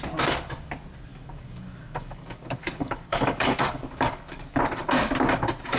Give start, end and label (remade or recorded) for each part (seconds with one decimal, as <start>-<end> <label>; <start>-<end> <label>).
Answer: 0.0-1.1 recorded; 1.1-4.6 remade; 4.6-5.8 recorded